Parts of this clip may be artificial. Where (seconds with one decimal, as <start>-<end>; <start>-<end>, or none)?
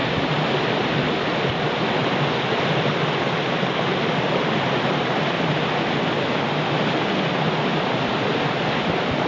none